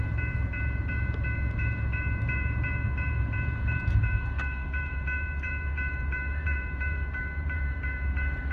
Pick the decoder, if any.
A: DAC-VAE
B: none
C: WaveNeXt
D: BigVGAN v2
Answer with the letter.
D